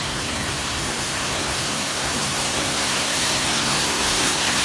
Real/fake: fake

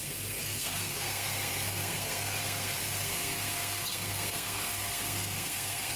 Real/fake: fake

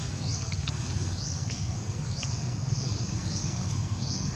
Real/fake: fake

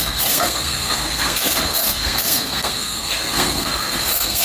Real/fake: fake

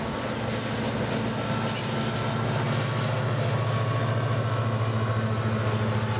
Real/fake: real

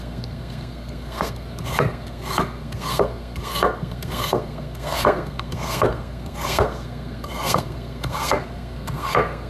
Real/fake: fake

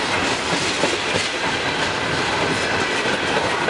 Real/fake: real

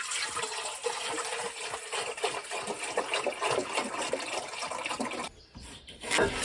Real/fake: real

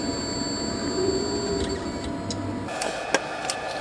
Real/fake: real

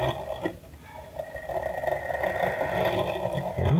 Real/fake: real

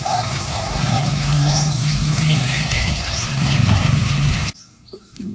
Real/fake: fake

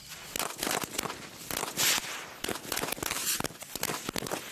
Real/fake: real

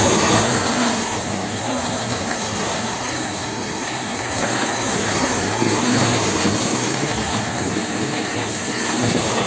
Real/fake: fake